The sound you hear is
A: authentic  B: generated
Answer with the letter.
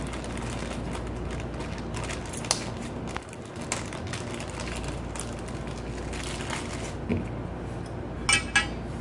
A